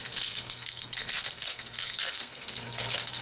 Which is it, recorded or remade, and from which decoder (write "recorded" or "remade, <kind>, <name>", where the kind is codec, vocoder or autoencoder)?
remade, codec, SNAC